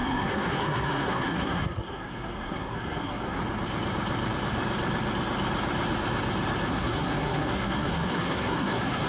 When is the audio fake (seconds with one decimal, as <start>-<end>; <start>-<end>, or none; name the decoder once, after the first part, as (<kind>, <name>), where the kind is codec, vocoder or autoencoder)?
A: 0.0-3.4 (codec, SNAC); 6.7-9.1